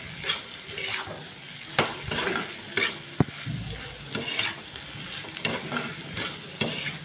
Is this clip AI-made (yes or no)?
no